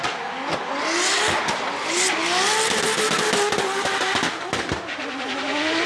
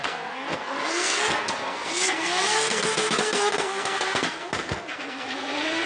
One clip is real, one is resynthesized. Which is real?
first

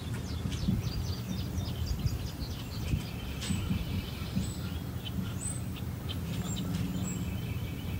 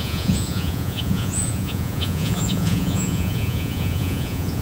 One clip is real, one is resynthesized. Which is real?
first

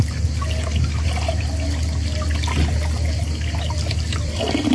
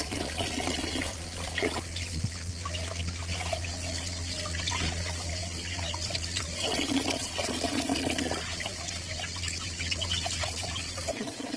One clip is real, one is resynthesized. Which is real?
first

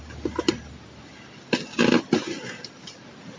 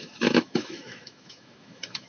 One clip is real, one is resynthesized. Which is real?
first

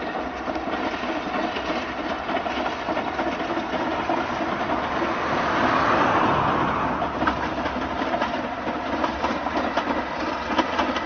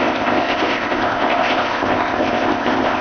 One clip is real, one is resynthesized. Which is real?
first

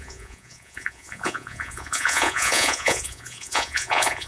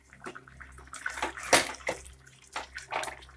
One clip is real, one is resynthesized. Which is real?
second